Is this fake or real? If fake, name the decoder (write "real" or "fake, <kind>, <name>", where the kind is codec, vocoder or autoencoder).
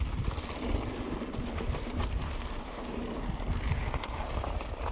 real